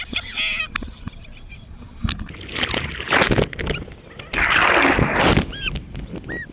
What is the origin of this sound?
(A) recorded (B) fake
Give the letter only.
A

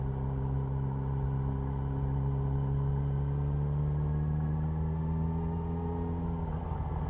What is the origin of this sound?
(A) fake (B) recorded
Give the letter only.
B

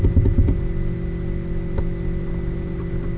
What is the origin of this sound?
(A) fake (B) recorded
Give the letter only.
B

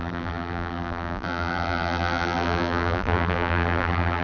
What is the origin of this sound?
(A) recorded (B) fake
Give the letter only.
B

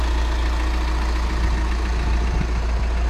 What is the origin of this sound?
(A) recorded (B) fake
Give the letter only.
A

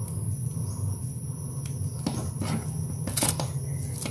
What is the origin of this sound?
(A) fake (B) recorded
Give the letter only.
B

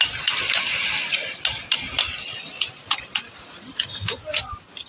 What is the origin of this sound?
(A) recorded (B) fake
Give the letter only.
A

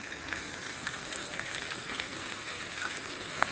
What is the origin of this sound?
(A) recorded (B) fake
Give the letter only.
B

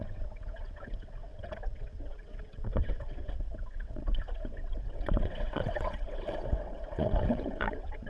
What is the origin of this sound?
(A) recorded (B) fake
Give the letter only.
B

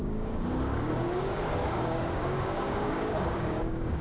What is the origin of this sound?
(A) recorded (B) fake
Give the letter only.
B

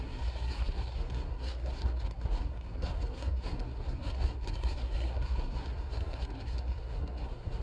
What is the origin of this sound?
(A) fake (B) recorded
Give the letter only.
A